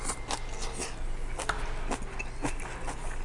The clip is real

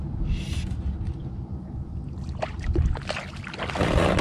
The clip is real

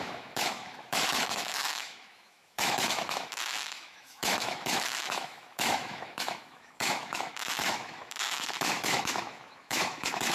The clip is fake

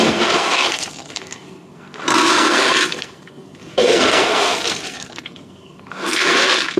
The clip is fake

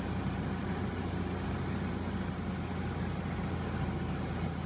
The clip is real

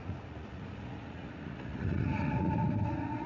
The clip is fake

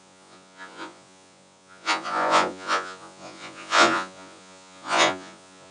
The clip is fake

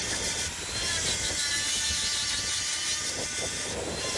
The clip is real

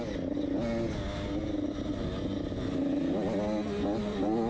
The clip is real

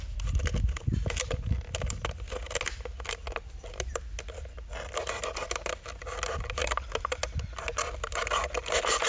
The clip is real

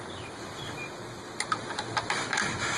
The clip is real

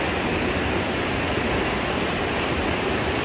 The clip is real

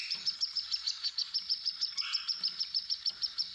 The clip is real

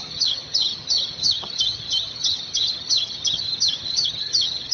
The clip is fake